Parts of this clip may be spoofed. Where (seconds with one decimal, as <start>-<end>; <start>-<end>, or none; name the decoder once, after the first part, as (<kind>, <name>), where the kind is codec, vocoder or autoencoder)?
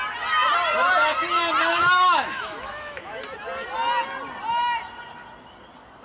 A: 1.7-3.2 (autoencoder, DAC-VAE)